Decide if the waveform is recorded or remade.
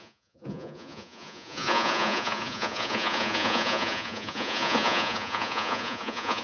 remade